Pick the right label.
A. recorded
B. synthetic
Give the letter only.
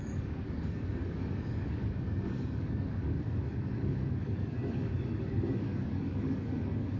B